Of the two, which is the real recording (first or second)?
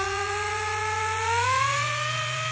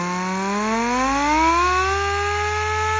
second